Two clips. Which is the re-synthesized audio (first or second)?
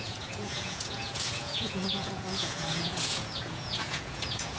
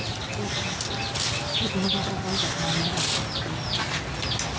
first